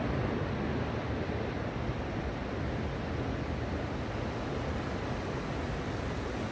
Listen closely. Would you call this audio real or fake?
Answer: real